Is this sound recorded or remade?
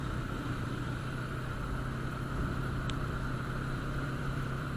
remade